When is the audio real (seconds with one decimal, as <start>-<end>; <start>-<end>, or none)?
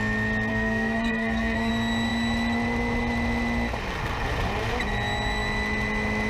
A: 0.0-0.5; 1.7-6.3